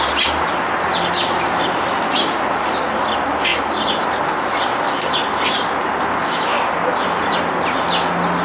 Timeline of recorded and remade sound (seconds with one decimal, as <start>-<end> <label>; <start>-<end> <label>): 0.0-8.4 recorded